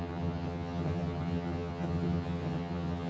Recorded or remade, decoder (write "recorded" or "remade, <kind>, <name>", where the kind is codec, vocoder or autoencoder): remade, vocoder, HiFi-GAN